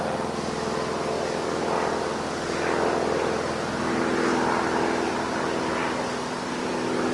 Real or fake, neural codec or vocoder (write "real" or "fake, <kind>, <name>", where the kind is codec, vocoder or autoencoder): real